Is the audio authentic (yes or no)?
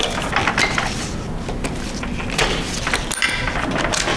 yes